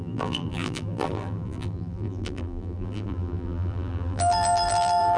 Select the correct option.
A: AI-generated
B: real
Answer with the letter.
A